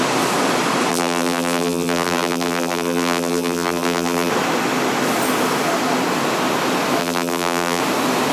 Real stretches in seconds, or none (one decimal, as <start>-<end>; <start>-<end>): 0.0-0.9; 4.3-7.0; 7.8-8.3